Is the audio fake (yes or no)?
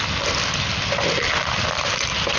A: no